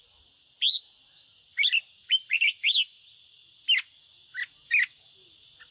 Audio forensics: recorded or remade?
recorded